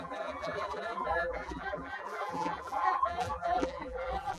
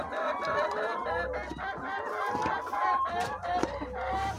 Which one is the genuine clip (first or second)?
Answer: second